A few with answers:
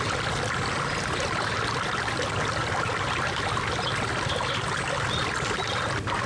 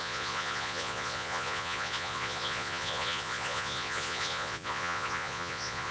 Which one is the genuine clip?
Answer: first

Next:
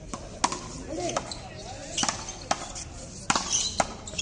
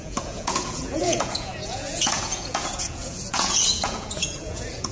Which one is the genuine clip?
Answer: first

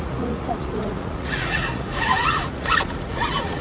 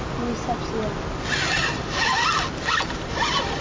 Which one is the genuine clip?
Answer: second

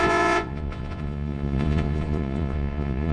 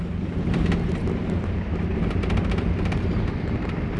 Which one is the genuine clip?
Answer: second